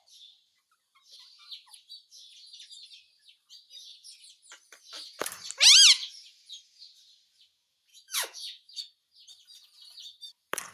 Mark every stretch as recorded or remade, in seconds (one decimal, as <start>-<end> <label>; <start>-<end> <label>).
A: 0.0-7.9 recorded; 7.9-8.8 remade; 8.8-10.7 recorded